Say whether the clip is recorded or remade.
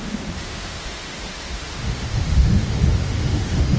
remade